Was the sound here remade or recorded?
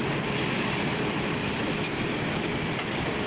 remade